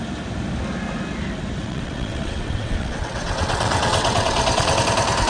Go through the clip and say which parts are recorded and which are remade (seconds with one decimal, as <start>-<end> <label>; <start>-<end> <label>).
0.0-1.6 recorded; 1.6-4.8 remade; 4.8-5.3 recorded